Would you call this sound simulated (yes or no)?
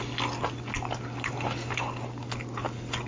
no